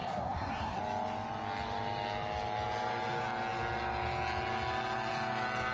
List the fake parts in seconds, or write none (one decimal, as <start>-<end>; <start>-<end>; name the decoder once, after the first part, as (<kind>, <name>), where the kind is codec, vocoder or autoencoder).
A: 0.0-0.8 (codec, SNAC)

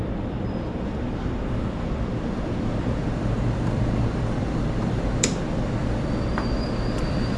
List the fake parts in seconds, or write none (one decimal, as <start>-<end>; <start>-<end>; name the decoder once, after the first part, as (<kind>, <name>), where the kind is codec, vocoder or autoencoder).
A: 0.0-7.4 (vocoder, BigVGAN v2)